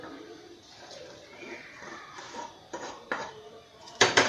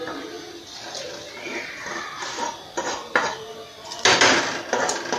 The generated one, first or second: first